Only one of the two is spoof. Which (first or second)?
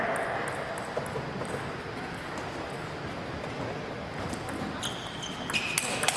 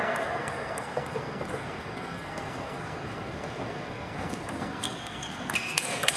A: second